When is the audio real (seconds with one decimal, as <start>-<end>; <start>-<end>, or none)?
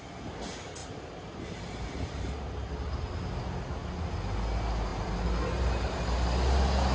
0.0-0.8; 2.7-4.9; 6.0-6.9